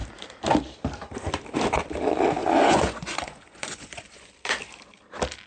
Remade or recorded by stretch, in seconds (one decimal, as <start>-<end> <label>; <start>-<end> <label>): 0.0-2.4 recorded; 2.4-4.3 remade; 4.3-5.5 recorded